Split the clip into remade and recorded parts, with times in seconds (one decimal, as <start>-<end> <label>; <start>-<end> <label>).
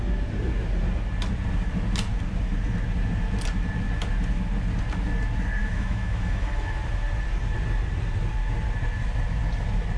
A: 0.0-5.6 recorded; 5.6-6.8 remade; 6.8-10.0 recorded